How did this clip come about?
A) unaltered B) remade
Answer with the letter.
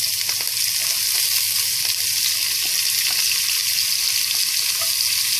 A